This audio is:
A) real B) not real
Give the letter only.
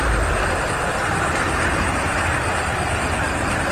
B